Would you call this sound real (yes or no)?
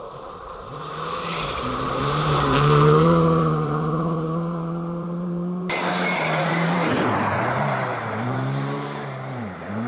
no